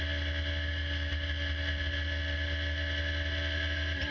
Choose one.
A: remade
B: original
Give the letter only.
B